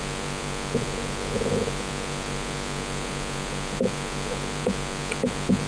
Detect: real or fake fake